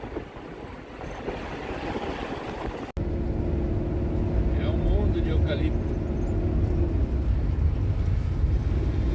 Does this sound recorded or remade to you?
recorded